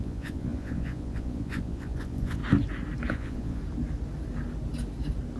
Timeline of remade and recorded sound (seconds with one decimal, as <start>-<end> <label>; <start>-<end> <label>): 0.0-2.4 remade; 2.4-3.1 recorded; 3.1-3.6 remade; 3.6-5.4 recorded